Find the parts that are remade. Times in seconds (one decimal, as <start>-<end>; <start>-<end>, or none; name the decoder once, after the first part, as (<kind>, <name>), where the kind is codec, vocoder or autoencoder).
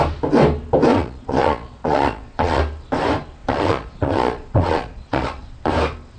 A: 0.9-2.6 (vocoder, Vocos); 3.4-5.7